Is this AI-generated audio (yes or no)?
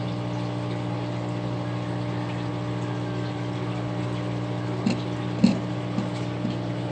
no